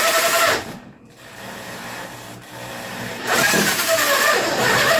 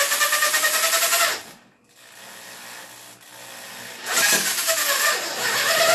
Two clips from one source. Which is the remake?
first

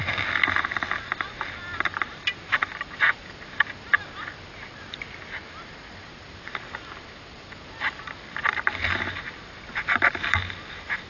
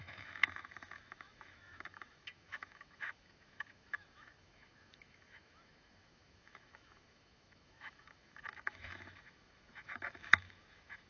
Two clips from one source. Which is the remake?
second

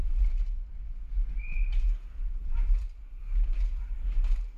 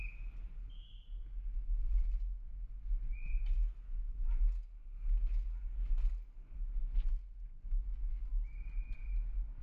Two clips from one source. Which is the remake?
first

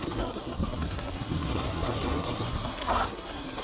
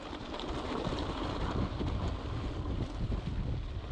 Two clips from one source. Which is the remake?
first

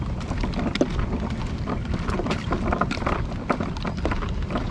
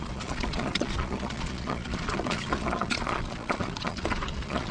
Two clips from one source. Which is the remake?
second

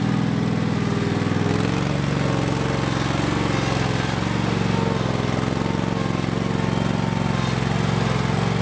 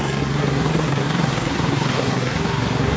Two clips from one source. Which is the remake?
second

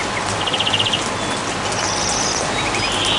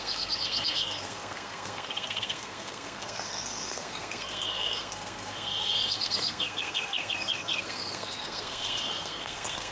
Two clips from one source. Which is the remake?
second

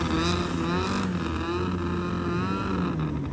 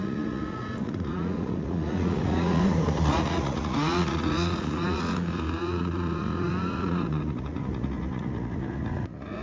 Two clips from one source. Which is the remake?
second